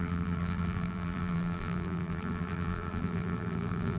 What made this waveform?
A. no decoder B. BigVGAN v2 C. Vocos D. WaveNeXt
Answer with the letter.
B